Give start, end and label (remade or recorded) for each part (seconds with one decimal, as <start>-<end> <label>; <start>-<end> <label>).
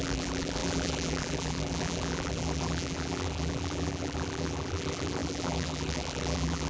0.0-6.7 remade